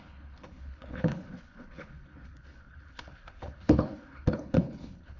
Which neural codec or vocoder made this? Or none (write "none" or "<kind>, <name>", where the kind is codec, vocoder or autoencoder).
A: codec, HILCodec